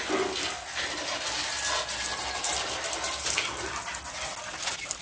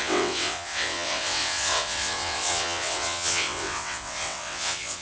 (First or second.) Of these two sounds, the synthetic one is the second